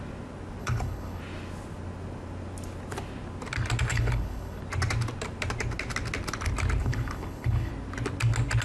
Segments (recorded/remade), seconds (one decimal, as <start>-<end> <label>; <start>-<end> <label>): 0.0-0.6 recorded; 0.6-1.2 remade; 1.2-3.9 recorded; 3.9-4.6 remade; 4.6-6.8 recorded; 6.8-7.7 remade; 7.7-8.6 recorded